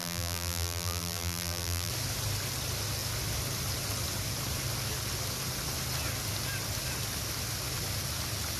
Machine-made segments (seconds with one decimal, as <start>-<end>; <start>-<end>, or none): 0.0-1.9